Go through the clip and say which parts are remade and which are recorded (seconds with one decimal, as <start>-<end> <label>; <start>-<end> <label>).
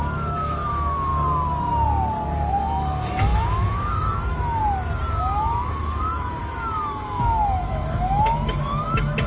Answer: 0.0-1.1 remade; 1.1-2.5 recorded; 2.5-4.6 remade; 4.6-5.2 recorded; 5.2-9.3 remade